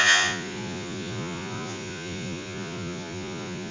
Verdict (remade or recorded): remade